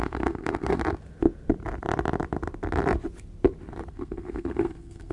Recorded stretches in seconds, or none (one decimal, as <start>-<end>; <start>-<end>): 0.8-3.9

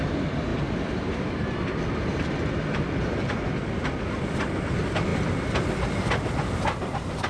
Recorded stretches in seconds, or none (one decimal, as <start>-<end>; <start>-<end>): 0.0-7.3

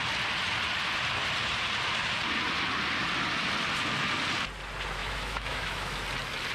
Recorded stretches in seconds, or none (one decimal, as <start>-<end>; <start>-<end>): 0.0-5.0; 6.0-6.5

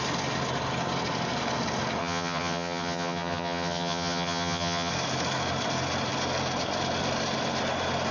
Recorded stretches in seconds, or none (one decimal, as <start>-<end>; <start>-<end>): 0.0-2.0; 4.9-8.1

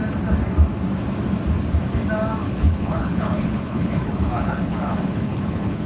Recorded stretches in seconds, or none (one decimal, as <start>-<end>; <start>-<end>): 0.0-2.4